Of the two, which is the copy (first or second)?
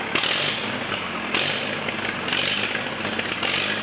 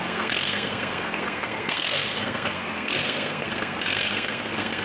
second